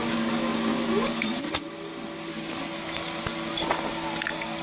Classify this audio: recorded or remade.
recorded